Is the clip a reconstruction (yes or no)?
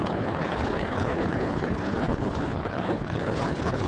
yes